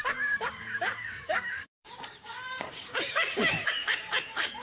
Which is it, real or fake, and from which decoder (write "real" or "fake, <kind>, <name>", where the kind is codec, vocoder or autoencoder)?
fake, codec, DAC